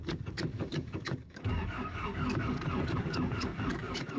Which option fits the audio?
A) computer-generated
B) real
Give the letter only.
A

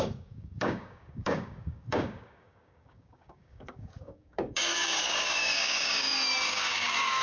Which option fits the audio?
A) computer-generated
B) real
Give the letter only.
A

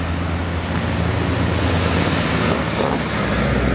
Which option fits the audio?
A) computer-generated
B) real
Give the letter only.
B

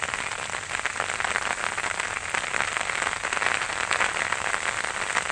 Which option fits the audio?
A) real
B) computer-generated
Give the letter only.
A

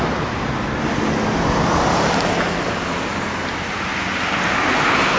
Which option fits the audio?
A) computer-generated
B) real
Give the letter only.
B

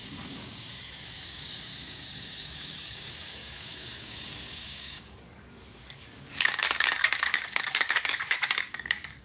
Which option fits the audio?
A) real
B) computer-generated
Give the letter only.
B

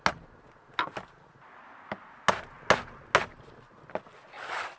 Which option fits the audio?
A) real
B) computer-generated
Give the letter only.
A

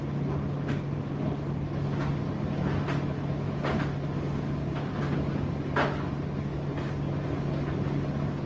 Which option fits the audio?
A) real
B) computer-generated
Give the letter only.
A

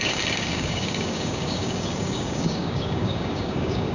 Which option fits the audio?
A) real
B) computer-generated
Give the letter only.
B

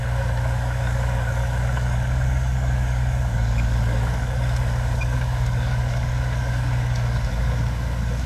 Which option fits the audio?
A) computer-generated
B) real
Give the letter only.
A